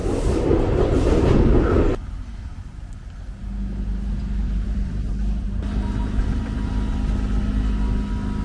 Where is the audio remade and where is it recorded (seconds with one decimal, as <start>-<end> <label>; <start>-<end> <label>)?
0.0-1.0 remade; 1.0-2.3 recorded; 2.3-3.1 remade; 3.1-4.4 recorded; 4.4-6.7 remade; 6.7-8.4 recorded